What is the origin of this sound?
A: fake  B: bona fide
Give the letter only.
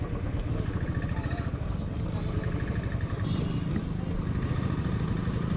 B